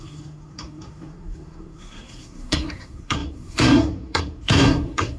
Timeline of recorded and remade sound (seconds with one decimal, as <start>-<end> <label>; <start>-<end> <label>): 0.0-5.2 remade

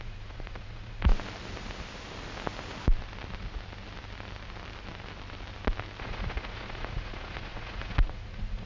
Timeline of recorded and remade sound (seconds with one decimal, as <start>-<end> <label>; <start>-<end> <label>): 0.0-1.1 remade; 1.1-6.0 recorded; 6.0-8.7 remade

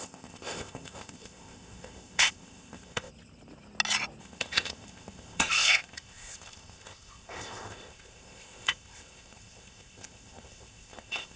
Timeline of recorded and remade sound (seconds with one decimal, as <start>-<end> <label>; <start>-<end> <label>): 0.0-3.1 remade; 3.1-4.2 recorded; 4.2-11.4 remade

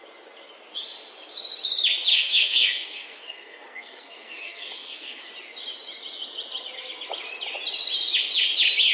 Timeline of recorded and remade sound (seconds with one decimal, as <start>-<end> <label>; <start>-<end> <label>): 0.0-2.1 recorded; 2.1-5.3 remade; 5.3-8.9 recorded

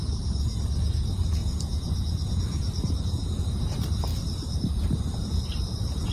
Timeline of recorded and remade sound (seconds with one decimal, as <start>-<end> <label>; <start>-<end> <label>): 0.0-4.1 recorded; 4.1-5.4 remade; 5.4-6.1 recorded